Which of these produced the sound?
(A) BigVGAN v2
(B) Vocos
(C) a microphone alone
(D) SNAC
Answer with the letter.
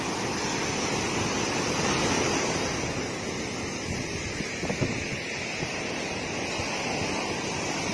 C